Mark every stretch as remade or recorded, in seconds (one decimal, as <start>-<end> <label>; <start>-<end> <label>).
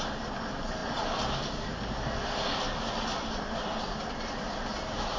0.0-5.2 recorded